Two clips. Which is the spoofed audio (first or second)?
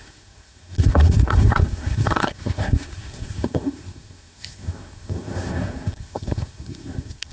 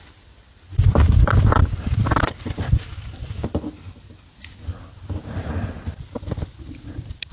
first